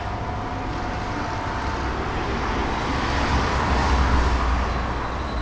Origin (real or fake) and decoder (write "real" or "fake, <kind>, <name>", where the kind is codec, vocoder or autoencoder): real